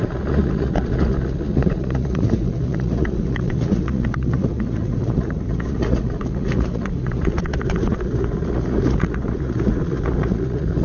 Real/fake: fake